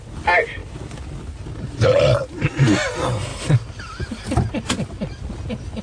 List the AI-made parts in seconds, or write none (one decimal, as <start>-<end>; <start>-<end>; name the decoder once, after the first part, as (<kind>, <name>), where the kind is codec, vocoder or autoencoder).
none